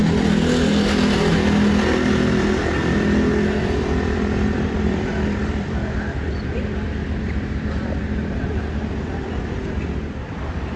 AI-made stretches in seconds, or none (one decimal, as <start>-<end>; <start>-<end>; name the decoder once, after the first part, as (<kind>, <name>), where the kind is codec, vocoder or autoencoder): 3.6-10.8 (vocoder, BigVGAN v2)